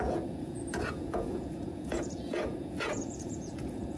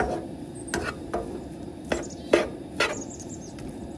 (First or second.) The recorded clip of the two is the second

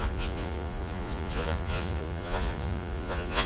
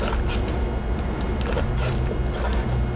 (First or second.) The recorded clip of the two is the second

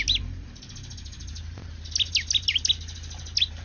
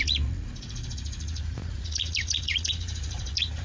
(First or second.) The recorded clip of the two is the first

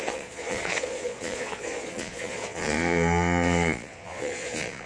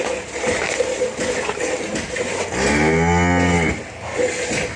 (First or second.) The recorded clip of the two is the second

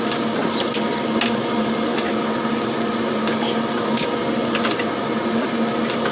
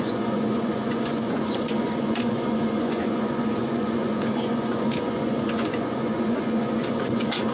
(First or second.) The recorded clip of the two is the first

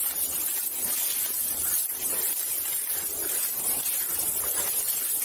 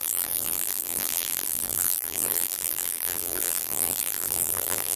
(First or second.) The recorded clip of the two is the first